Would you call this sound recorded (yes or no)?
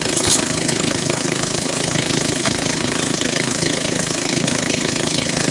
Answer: no